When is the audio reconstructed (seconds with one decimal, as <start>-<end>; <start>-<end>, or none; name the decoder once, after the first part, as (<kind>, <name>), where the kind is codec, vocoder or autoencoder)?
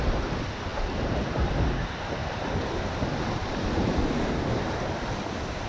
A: none